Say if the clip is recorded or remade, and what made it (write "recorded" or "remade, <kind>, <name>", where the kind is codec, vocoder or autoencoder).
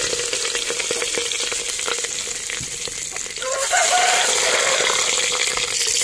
recorded